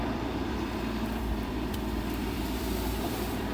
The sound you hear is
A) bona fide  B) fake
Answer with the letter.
B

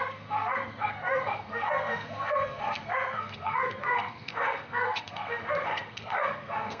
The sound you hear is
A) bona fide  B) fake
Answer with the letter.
B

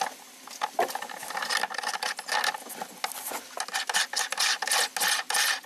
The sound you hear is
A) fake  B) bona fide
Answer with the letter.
B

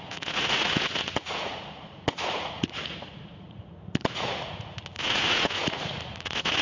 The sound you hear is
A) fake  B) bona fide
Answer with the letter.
A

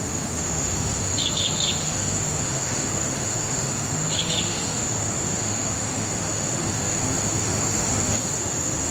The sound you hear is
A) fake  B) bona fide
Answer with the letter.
A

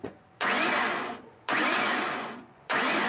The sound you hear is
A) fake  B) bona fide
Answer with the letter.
A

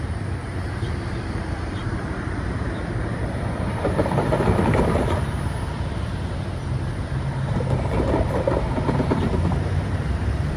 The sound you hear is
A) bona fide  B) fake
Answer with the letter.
B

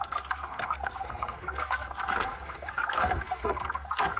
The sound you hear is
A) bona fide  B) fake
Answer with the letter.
B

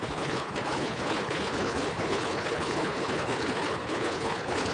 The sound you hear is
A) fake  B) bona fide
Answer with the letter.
A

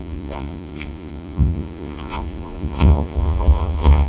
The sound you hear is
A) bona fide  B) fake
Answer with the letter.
B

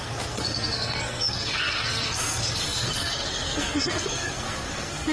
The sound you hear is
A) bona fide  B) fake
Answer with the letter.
B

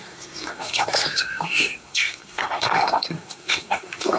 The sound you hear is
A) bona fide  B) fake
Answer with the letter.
B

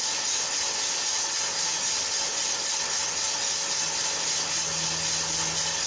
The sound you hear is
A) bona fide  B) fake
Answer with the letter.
A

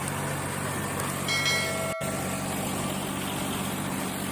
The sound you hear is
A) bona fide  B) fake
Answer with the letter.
A